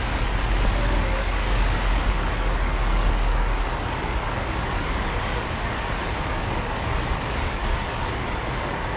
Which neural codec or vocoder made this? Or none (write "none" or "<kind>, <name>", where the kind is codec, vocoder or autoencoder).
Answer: codec, DAC